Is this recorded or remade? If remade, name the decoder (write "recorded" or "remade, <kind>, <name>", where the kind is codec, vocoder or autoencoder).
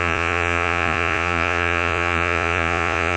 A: remade, vocoder, Vocos